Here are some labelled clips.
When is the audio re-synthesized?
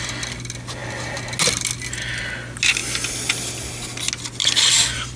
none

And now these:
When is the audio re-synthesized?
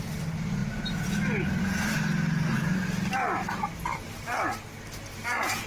none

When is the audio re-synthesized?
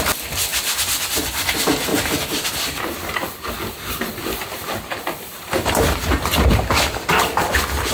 1.9-5.7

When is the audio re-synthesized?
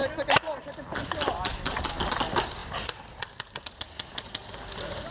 0.0-2.1; 2.6-3.7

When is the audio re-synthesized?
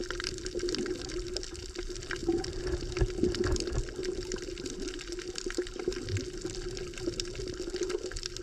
4.0-4.9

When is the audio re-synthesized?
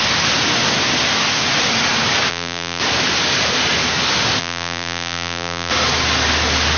2.3-2.8; 4.4-5.7